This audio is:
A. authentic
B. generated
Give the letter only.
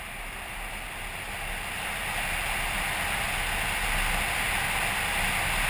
A